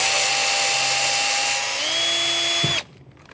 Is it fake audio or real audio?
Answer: real